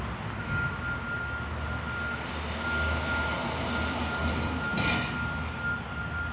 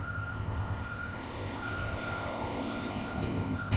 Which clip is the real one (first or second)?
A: first